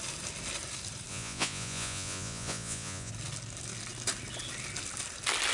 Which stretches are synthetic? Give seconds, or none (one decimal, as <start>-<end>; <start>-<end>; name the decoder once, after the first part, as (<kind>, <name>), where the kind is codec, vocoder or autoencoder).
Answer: 1.1-3.1 (vocoder, Vocos)

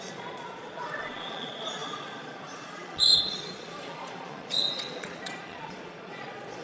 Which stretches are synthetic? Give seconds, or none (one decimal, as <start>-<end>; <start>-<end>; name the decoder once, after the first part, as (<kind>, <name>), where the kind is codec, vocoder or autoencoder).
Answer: 0.0-6.6 (vocoder, Vocos)

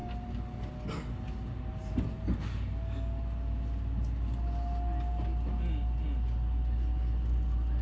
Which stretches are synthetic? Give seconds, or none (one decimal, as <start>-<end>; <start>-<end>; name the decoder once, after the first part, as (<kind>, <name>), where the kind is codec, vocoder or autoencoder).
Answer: none